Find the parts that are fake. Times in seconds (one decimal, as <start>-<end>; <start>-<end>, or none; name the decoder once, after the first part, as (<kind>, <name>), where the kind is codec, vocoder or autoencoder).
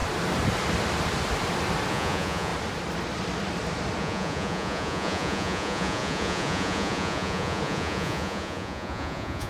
1.9-2.5 (vocoder, Vocos); 4.0-9.5